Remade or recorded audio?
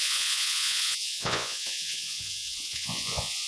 remade